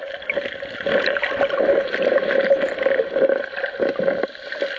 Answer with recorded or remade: recorded